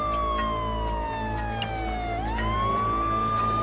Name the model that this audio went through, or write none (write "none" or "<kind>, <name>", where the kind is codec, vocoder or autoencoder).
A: none